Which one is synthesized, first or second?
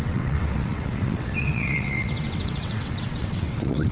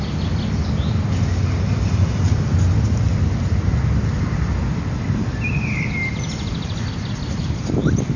first